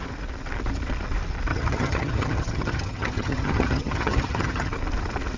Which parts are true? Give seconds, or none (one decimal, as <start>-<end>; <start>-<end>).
0.0-1.5; 4.7-5.4